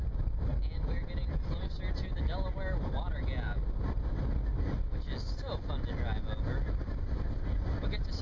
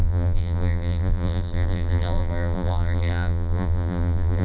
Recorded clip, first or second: first